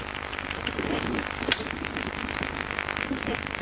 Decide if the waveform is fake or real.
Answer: real